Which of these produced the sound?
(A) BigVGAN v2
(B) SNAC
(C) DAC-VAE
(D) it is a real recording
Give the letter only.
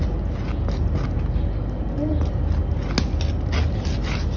D